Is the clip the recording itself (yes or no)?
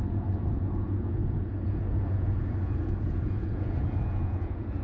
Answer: no